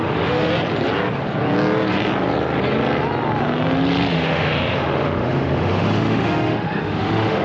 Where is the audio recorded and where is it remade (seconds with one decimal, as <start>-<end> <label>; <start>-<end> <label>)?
0.0-0.5 remade; 0.5-4.1 recorded; 4.1-7.4 remade